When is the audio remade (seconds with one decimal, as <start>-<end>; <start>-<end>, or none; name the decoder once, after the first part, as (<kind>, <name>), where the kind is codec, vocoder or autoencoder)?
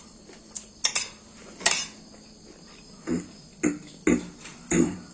0.0-0.7 (vocoder, BigVGAN v2); 2.8-3.5; 4.4-5.1